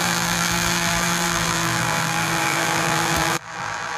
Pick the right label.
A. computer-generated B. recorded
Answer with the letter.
A